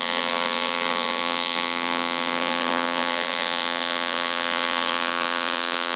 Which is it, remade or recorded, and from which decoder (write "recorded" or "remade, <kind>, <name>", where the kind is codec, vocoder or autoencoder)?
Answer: remade, vocoder, BigVGAN v2